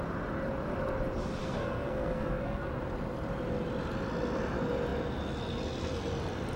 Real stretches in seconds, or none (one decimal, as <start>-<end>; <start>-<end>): 0.0-1.4; 2.7-6.6